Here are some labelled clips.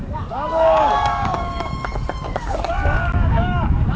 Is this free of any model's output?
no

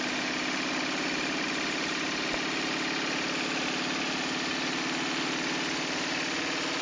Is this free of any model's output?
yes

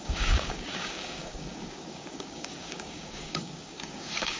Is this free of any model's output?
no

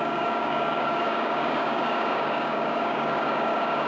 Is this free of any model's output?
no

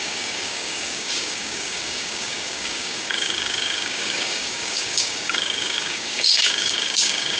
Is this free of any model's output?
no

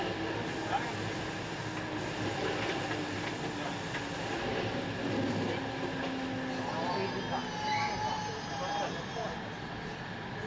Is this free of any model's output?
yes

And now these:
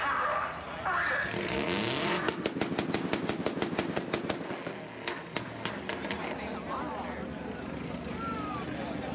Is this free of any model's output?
yes